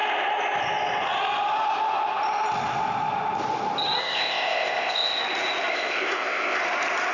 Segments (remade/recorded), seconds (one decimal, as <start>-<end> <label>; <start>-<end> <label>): 0.0-4.0 recorded; 4.0-5.2 remade; 5.2-5.7 recorded; 5.7-6.6 remade; 6.6-7.1 recorded